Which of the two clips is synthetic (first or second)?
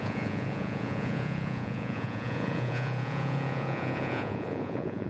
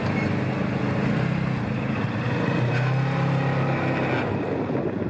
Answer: first